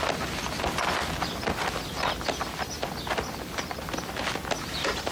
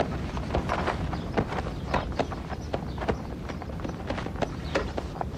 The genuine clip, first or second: first